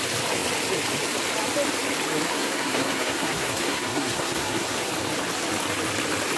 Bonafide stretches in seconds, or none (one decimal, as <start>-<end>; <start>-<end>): 0.0-2.3; 4.9-6.4